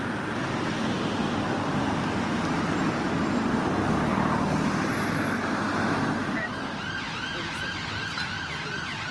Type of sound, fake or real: real